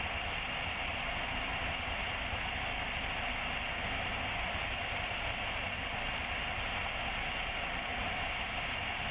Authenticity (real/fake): real